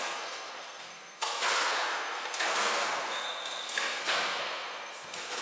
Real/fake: fake